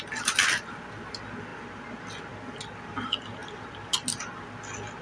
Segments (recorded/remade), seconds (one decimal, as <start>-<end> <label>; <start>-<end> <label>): 0.0-5.0 recorded